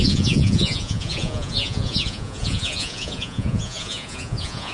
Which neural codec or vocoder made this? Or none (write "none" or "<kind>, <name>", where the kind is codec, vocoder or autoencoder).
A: vocoder, Vocos